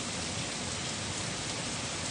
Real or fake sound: real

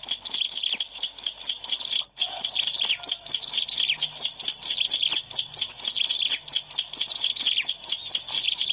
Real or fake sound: real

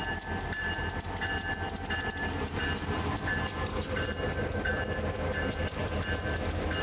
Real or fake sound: real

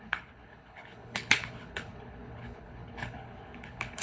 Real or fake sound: fake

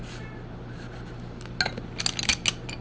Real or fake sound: real